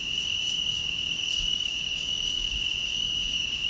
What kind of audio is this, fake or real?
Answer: fake